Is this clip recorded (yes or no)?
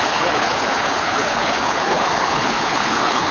no